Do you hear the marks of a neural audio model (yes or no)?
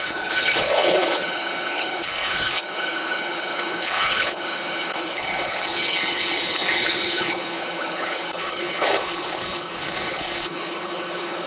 yes